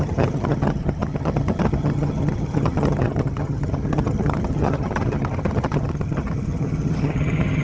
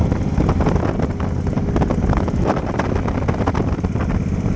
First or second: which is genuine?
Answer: second